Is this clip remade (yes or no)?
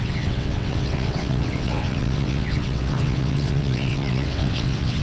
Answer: yes